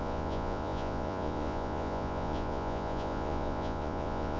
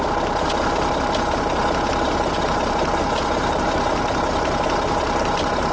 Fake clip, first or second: first